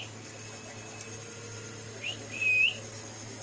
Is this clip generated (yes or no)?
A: no